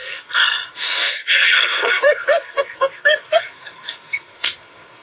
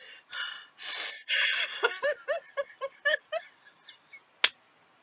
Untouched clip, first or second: second